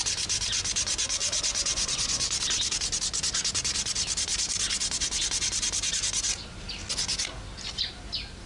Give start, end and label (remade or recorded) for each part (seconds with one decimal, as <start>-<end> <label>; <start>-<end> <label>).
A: 0.0-1.2 recorded; 1.2-2.4 remade; 2.4-8.5 recorded